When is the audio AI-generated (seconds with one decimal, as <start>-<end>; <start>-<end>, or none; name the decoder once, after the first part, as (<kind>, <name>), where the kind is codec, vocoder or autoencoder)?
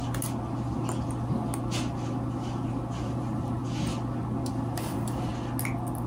3.0-3.6 (vocoder, BigVGAN v2); 4.5-5.3